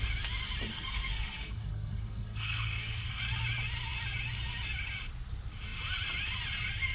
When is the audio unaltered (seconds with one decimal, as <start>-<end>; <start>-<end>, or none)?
0.0-0.7; 3.2-6.9